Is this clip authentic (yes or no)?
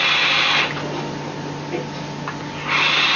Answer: yes